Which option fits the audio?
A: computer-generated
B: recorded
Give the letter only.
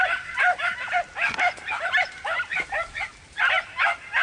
A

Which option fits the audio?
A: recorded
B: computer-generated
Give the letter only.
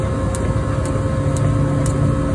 A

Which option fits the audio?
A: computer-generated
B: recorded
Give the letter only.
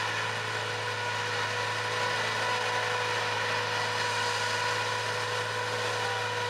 B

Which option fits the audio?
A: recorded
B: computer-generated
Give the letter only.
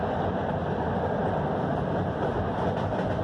A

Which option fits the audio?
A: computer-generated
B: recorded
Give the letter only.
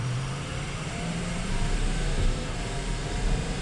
A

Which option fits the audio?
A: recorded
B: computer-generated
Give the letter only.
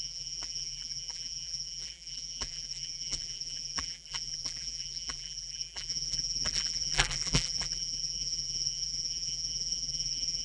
B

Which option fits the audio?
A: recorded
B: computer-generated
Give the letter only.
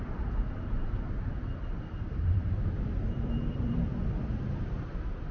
B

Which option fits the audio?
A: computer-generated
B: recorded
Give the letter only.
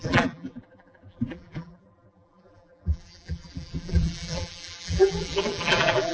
A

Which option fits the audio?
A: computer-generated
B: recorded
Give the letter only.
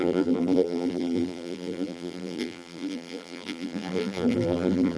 A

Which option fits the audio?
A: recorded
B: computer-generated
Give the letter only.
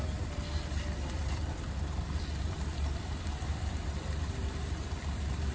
B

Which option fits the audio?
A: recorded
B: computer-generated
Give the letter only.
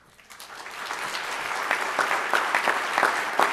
A